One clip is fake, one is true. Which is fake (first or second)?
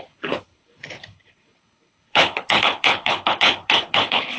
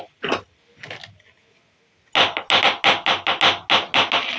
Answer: first